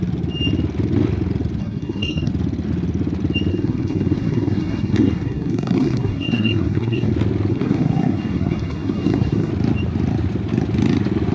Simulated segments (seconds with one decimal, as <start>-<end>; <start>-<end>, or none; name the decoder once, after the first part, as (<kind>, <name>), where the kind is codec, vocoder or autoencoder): 1.6-2.3 (codec, SNAC); 3.5-7.1; 7.5-9.5